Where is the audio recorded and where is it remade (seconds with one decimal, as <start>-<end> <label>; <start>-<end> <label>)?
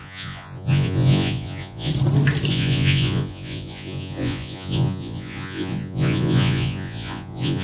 0.0-1.9 remade; 1.9-2.5 recorded; 2.5-7.6 remade